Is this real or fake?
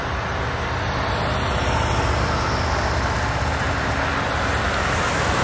real